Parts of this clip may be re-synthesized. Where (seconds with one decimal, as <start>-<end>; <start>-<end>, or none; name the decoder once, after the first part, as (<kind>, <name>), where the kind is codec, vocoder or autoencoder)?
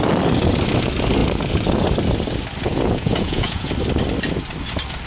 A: 2.7-3.7 (vocoder, Vocos)